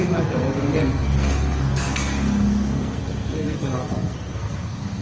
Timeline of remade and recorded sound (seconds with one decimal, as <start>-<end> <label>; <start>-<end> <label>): 0.0-5.0 remade